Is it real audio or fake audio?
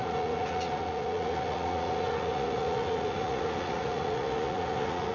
fake